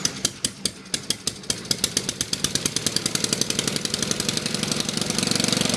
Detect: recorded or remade recorded